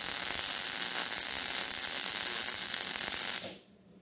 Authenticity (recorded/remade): recorded